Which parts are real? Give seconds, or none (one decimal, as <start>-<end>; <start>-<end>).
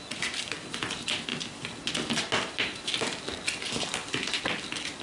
0.0-5.0